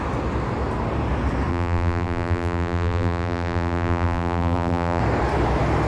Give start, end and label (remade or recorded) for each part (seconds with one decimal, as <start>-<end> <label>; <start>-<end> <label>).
0.0-1.5 recorded; 1.5-5.0 remade; 5.0-5.9 recorded